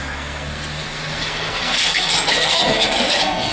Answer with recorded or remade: remade